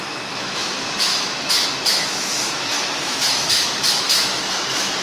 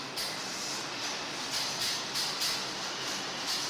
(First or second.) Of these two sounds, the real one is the second